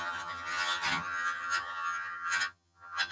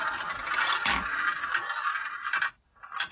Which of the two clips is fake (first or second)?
first